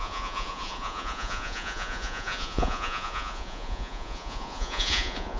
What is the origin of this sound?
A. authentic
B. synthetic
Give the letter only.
B